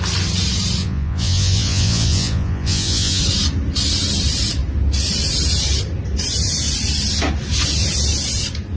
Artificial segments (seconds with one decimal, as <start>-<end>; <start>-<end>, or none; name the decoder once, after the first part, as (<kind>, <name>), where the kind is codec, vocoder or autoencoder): 0.8-3.2 (vocoder, Vocos)